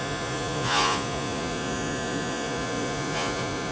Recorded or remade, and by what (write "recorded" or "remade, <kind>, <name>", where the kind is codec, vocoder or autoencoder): remade, vocoder, Vocos